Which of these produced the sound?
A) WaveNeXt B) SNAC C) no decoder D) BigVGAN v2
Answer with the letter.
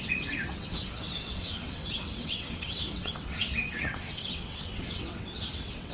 A